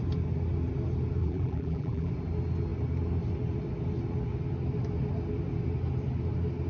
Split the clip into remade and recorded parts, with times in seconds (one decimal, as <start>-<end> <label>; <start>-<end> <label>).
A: 0.0-1.2 recorded; 1.2-2.1 remade; 2.1-6.7 recorded